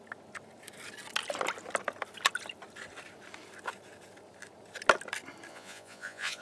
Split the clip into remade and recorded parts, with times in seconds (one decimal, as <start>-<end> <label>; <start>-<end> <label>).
0.0-5.5 recorded; 5.5-6.4 remade